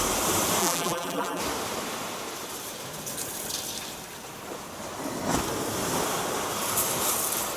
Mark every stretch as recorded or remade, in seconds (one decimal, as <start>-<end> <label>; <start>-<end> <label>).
0.0-0.6 recorded; 0.6-1.4 remade; 1.4-7.6 recorded